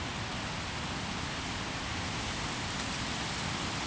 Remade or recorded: recorded